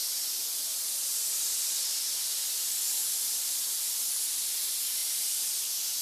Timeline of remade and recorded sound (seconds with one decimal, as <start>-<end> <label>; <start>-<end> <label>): 0.0-1.1 remade; 1.1-6.0 recorded